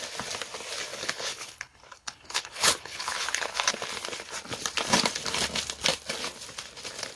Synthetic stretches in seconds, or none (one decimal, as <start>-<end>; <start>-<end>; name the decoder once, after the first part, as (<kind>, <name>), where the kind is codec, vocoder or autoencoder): 0.9-3.7 (codec, HILCodec)